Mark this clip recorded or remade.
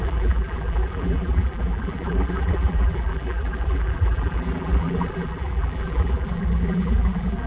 remade